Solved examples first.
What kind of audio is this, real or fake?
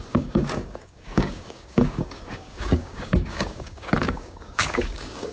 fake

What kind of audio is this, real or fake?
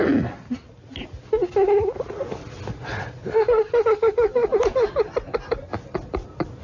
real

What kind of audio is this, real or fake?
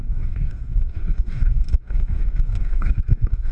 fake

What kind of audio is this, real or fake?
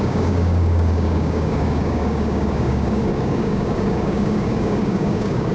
fake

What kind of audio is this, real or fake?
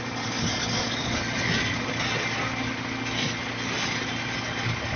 real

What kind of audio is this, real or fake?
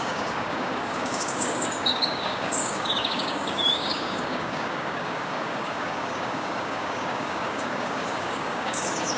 fake